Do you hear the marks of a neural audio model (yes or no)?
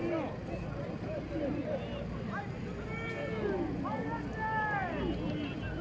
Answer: no